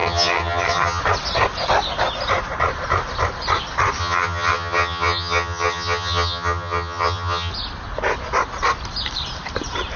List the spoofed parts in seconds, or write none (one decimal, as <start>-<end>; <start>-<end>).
0.0-1.0; 4.0-7.5